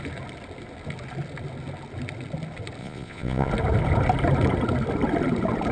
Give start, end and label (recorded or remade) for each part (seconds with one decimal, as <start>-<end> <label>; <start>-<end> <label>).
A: 0.0-2.8 recorded; 2.8-3.5 remade; 3.5-5.7 recorded